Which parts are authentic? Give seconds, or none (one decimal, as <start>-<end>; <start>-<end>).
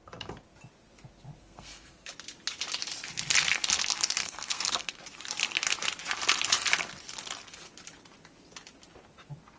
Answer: 0.0-1.4; 2.1-4.2; 5.0-9.6